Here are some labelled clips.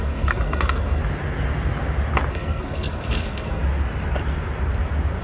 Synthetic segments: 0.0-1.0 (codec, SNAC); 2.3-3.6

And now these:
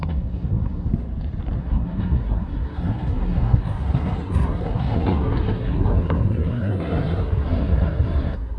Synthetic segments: 0.0-0.9 (codec, SNAC); 1.6-8.6